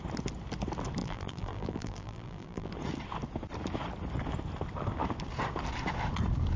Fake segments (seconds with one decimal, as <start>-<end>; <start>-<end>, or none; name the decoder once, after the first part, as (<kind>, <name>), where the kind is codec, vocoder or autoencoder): 1.0-2.7 (vocoder, BigVGAN v2)